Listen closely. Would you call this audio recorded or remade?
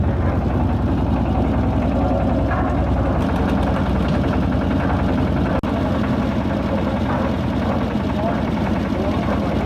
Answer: recorded